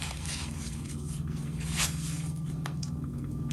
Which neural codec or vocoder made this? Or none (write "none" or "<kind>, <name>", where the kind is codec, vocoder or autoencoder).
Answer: codec, SNAC